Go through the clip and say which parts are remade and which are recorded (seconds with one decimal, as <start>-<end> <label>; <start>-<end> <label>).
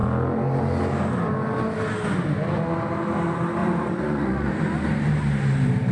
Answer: 0.0-3.6 recorded; 3.6-4.5 remade; 4.5-5.9 recorded